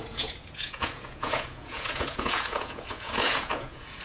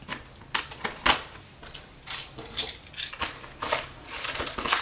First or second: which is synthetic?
first